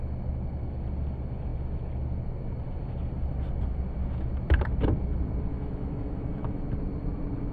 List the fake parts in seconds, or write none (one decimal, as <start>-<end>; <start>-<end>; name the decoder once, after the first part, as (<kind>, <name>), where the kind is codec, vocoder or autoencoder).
5.5-6.6 (autoencoder, DAC-VAE)